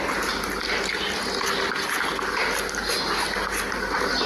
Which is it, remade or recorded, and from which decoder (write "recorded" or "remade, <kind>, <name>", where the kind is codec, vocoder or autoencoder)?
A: recorded